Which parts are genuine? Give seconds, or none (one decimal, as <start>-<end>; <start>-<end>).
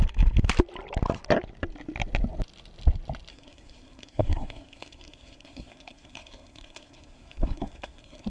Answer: 0.0-3.3